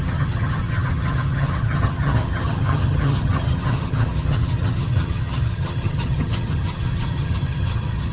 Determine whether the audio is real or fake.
fake